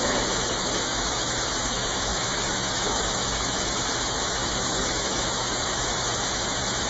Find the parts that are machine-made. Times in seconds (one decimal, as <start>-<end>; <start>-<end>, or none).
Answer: 0.0-6.9

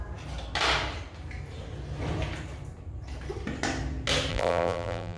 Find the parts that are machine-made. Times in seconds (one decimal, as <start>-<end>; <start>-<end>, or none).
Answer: 4.3-5.2

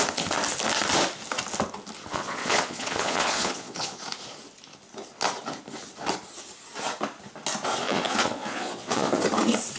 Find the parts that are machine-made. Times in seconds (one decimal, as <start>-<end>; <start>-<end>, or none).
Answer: 2.1-4.0; 7.8-9.2

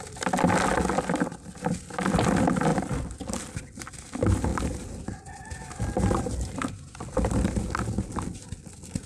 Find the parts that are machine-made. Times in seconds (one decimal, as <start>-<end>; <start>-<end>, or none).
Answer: none